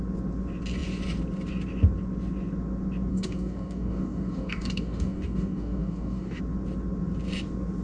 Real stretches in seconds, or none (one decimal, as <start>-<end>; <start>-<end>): 0.0-3.1; 6.4-7.8